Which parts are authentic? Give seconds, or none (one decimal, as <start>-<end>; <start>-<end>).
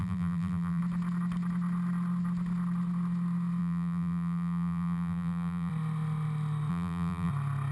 0.8-3.6; 5.7-6.7; 7.3-7.7